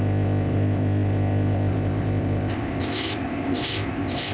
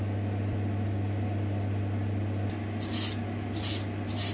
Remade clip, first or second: first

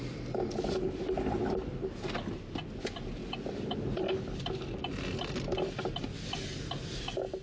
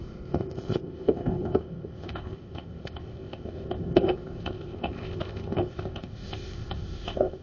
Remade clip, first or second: second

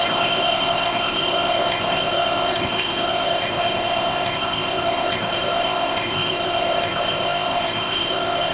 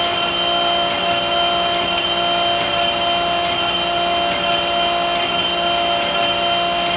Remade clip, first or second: first